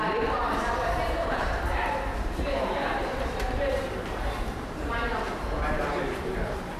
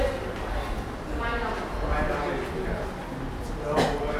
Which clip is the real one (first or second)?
second